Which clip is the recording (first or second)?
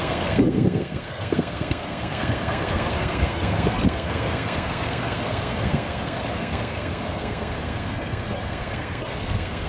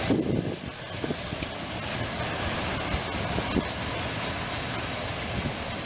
second